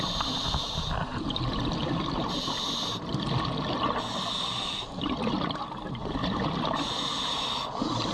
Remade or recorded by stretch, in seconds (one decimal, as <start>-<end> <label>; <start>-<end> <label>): 0.0-8.1 recorded